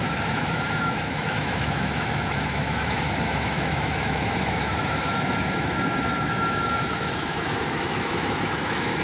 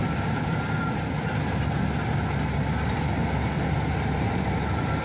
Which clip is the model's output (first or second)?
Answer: first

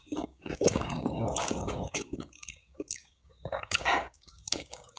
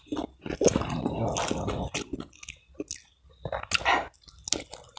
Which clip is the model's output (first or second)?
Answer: first